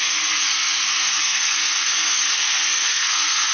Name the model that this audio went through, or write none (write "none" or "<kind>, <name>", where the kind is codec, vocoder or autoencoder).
codec, SNAC